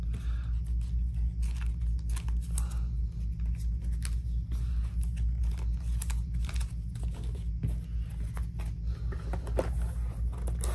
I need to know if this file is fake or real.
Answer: real